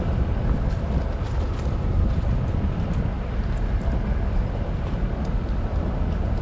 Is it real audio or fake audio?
real